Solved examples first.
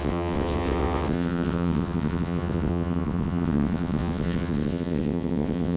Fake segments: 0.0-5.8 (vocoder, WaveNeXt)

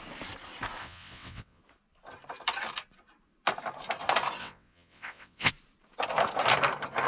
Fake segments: 0.8-1.6 (vocoder, WaveNeXt); 4.4-5.5

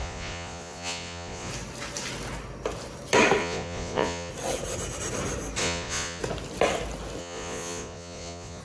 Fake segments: 0.0-1.5 (vocoder, Vocos); 3.4-4.3; 5.6-6.2; 7.2-8.6

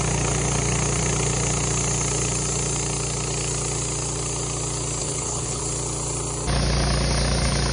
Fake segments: 5.0-5.6 (codec, HILCodec)